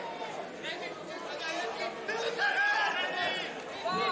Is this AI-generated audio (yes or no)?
no